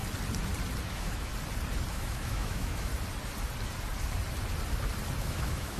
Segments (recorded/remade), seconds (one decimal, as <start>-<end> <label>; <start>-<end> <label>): 0.0-0.8 recorded; 0.8-1.3 remade; 1.3-1.9 recorded; 1.9-2.9 remade; 2.9-5.2 recorded; 5.2-5.8 remade